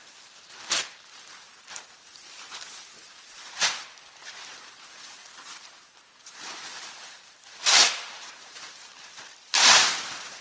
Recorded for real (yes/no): no